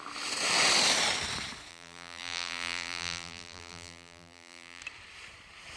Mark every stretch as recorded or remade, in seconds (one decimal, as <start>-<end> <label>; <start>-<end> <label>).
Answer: 0.0-1.7 recorded; 1.7-4.8 remade; 4.8-5.8 recorded